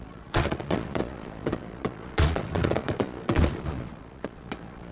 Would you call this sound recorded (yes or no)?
no